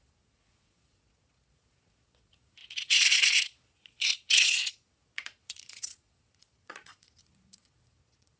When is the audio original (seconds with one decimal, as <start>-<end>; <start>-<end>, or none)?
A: none